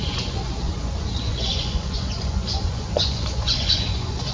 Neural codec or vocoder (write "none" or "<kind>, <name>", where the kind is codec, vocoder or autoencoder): vocoder, Vocos